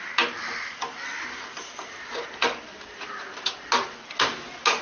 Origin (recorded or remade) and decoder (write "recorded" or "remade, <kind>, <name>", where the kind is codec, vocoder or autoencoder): recorded